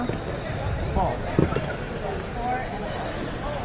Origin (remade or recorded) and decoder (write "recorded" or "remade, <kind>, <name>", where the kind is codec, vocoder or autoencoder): recorded